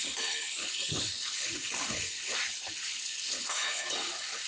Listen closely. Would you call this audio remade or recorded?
remade